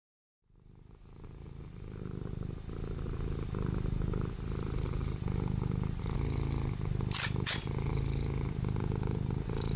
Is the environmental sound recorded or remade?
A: recorded